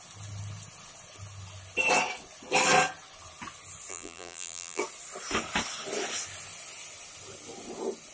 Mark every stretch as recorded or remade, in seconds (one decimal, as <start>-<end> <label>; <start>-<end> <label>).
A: 0.0-3.9 recorded; 3.9-4.8 remade; 4.8-8.1 recorded